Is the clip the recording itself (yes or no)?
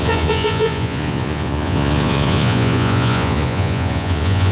no